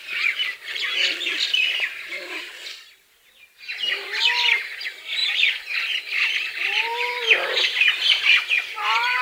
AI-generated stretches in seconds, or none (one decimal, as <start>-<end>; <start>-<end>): 5.2-7.9